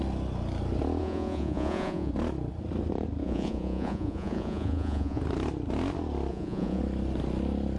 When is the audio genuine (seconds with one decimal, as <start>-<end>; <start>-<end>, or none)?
0.0-1.0; 2.1-3.2; 5.2-6.3; 6.8-7.8